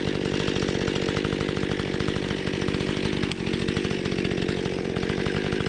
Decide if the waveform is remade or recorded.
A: recorded